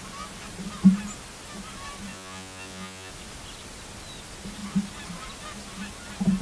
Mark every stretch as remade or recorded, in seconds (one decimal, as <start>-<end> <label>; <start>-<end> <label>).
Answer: 0.0-2.1 recorded; 2.1-3.1 remade; 3.1-6.4 recorded